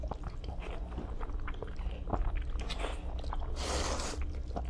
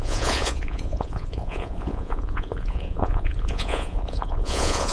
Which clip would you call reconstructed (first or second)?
second